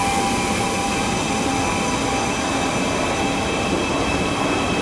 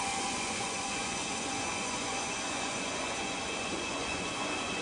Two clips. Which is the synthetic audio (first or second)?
second